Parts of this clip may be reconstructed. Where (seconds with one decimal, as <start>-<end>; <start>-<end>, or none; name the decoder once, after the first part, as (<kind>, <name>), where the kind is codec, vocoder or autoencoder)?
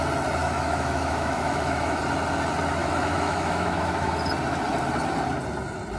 0.4-2.0 (autoencoder, DAC-VAE); 2.8-4.2